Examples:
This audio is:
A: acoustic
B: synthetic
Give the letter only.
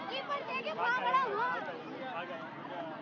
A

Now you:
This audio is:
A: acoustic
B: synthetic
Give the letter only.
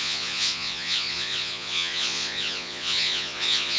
B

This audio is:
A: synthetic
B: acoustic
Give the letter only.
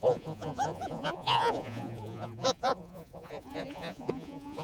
A